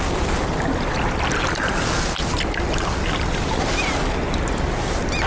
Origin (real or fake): real